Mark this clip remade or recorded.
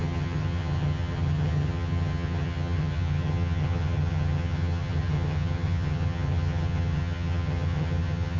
remade